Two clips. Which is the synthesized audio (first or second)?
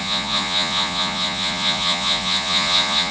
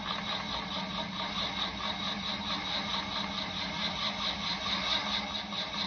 first